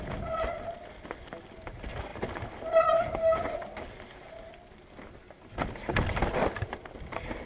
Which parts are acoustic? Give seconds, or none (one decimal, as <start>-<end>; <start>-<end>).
0.0-7.5